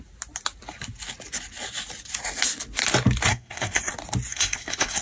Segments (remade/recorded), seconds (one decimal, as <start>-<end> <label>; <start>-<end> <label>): 0.0-3.3 recorded; 3.3-3.9 remade; 3.9-4.3 recorded; 4.3-5.0 remade